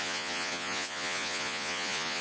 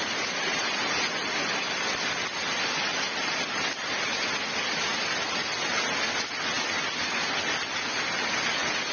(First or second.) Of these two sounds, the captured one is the second